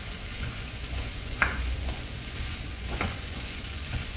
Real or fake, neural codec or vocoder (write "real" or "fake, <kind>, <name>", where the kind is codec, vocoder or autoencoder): fake, vocoder, Vocos